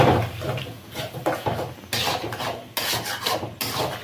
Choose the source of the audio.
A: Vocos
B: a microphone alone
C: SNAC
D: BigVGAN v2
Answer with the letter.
B